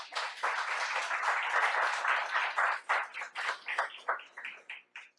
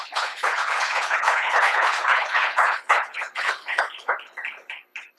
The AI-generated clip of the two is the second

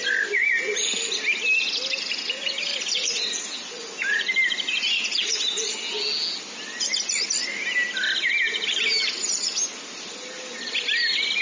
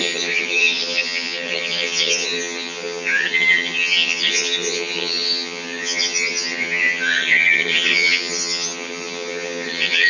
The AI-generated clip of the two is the second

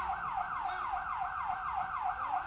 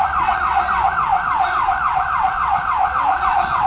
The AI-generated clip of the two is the second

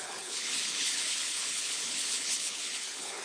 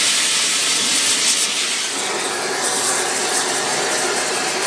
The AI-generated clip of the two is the first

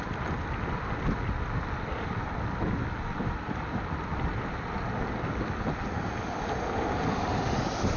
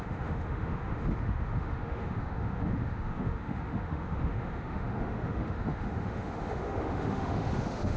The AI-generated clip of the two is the second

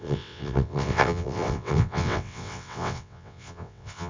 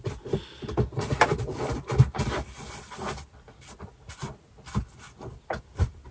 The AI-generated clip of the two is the first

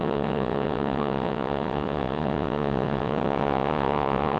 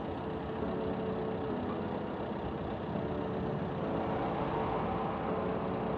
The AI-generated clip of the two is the first